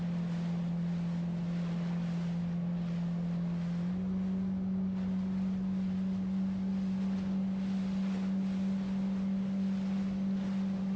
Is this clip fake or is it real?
real